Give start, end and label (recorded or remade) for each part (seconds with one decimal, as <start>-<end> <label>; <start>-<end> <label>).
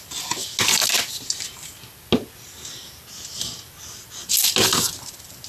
0.0-5.5 recorded